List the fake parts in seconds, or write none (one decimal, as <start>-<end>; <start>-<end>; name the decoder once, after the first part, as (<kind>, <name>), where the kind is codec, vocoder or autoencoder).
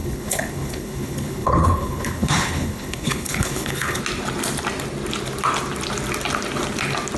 0.0-4.0 (codec, HILCodec)